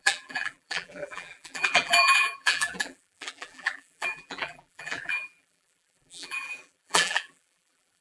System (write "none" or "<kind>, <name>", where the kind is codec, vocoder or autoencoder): vocoder, BigVGAN v2